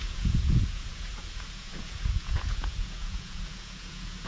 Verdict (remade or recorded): remade